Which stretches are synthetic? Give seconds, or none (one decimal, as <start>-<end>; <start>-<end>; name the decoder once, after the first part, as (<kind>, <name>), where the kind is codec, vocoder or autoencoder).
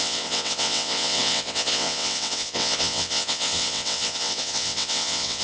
0.0-5.4 (vocoder, WaveNeXt)